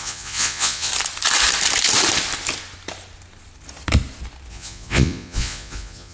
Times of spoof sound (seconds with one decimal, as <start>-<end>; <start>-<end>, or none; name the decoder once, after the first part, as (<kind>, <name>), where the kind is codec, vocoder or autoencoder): 0.0-0.9 (vocoder, Vocos); 4.5-6.1